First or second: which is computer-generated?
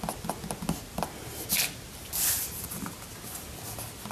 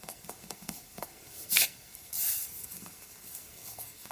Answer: second